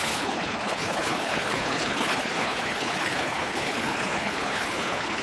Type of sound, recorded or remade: remade